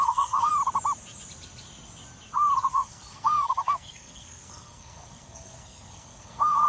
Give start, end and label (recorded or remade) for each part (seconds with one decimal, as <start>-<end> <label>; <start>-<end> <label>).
0.0-0.5 remade; 0.5-2.7 recorded; 2.7-6.7 remade